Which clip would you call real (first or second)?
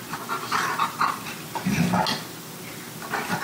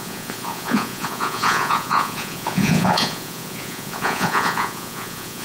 first